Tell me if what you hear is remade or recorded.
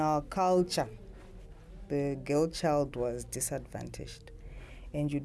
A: recorded